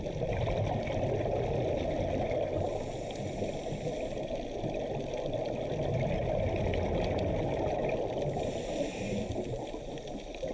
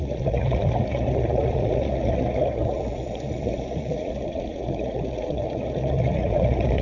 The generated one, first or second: second